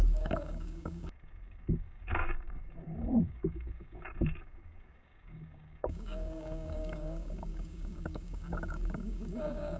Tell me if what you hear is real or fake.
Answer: fake